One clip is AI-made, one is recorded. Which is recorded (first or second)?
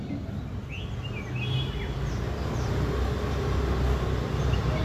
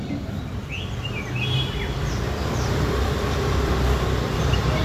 first